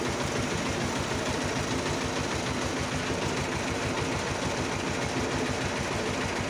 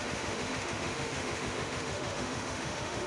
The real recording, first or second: first